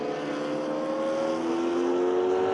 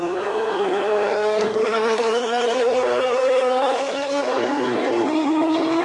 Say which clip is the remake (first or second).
second